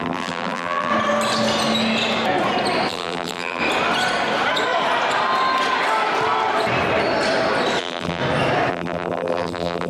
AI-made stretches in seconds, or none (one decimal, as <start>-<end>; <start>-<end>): 0.0-0.9; 2.9-3.6; 7.8-8.2; 8.7-9.9